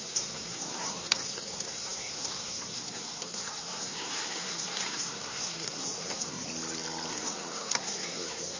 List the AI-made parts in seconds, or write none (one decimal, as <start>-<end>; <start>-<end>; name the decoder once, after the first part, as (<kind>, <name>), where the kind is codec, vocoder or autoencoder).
0.0-6.5 (codec, SNAC); 7.1-8.6